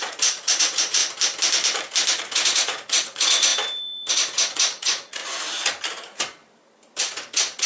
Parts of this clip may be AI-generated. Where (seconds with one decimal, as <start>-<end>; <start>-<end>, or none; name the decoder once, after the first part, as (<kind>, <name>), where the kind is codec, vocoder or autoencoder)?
0.0-1.0 (vocoder, Vocos); 2.2-3.5; 4.1-5.2; 5.9-6.4; 7.0-7.7